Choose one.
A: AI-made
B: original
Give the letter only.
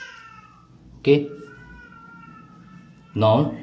B